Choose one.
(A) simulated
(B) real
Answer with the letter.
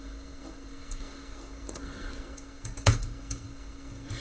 A